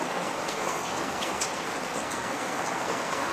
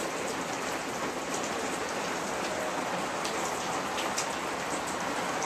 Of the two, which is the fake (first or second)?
first